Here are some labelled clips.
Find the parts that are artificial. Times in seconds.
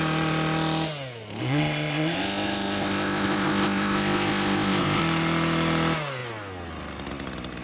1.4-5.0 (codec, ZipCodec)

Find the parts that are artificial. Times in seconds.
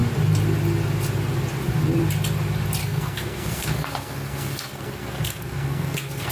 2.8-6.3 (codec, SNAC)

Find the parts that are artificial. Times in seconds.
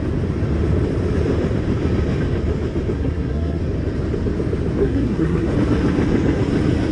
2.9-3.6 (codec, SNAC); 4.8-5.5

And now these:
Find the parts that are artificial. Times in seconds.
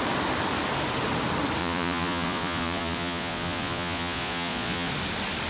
1.6-4.9 (vocoder, Vocos)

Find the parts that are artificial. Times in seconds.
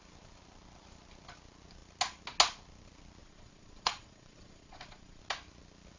3.2-5.2 (vocoder, Vocos)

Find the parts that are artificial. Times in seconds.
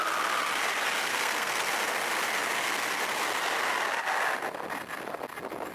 1.1-1.7 (codec, SNAC)